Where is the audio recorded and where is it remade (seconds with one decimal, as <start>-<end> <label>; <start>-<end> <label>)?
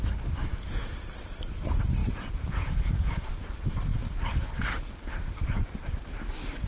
0.0-0.5 recorded; 0.5-1.2 remade; 1.2-2.0 recorded; 2.0-3.3 remade; 3.3-6.7 recorded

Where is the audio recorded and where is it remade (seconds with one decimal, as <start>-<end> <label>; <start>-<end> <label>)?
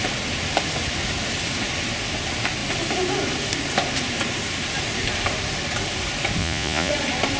0.0-6.4 recorded; 6.4-6.9 remade; 6.9-7.4 recorded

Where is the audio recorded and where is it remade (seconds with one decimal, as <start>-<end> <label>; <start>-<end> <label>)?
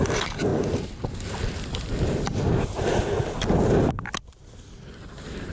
0.0-5.5 recorded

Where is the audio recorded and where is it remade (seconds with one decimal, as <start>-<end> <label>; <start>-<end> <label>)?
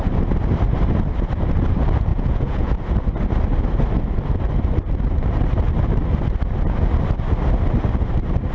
0.0-2.1 recorded; 2.1-2.7 remade; 2.7-8.5 recorded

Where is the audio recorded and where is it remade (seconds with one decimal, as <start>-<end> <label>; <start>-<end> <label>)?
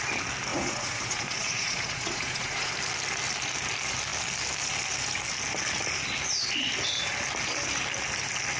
0.0-0.5 recorded; 0.5-2.7 remade; 2.7-8.6 recorded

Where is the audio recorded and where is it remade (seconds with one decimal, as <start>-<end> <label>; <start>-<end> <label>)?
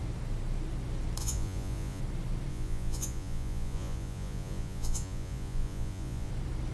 0.0-1.2 recorded; 1.2-2.0 remade; 2.0-2.5 recorded; 2.5-6.3 remade; 6.3-6.7 recorded